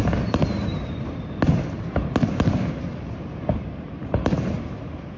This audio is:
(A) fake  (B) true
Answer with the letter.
B